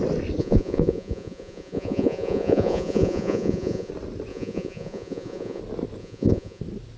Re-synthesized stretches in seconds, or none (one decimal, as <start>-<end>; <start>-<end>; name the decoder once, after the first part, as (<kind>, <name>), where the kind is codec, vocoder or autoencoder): 0.4-3.9 (vocoder, Vocos); 4.3-5.6; 6.0-6.6